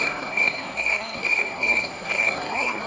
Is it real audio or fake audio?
fake